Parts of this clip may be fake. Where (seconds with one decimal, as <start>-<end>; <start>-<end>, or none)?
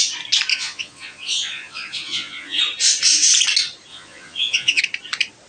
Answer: 0.5-2.6; 3.9-4.8